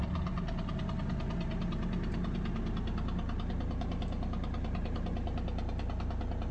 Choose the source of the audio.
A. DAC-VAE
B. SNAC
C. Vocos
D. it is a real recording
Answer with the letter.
D